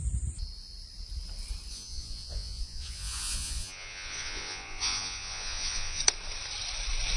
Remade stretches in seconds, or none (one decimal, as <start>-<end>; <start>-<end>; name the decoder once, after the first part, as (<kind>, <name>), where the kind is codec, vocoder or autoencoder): 1.7-6.0 (vocoder, Vocos)